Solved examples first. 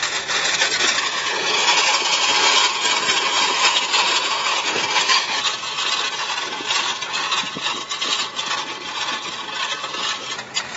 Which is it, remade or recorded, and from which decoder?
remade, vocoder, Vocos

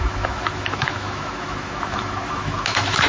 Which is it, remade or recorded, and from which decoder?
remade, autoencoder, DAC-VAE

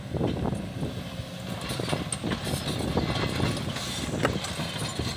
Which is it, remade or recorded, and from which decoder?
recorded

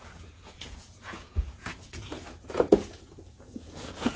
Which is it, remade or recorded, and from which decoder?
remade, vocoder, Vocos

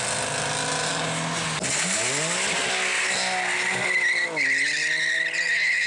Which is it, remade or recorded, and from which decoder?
recorded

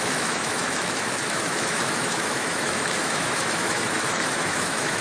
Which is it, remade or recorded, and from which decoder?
remade, autoencoder, DAC-VAE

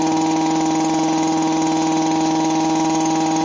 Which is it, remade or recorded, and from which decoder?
recorded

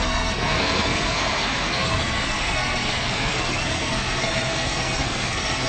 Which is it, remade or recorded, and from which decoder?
remade, codec, SNAC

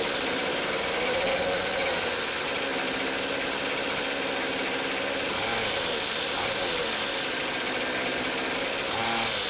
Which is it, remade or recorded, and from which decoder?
recorded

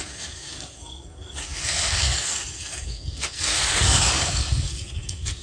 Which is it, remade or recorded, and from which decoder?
remade, codec, SNAC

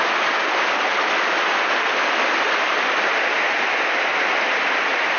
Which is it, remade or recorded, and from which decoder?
recorded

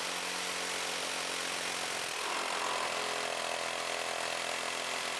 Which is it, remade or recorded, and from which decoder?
recorded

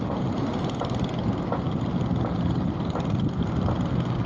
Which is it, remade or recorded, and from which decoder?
recorded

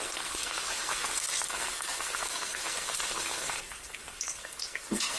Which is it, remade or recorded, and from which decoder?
remade, codec, SNAC